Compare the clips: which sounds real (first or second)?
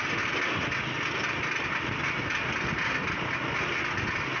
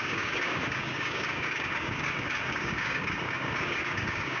first